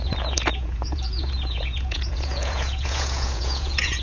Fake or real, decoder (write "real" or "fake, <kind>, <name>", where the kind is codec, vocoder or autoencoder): fake, vocoder, Vocos